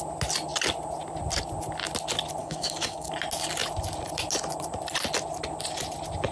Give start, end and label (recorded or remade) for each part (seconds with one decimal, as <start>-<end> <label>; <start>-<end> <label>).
0.0-2.4 recorded; 2.4-3.1 remade; 3.1-6.3 recorded